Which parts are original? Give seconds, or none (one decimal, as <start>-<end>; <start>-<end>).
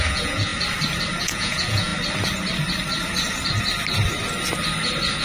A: 0.5-1.2; 1.9-5.2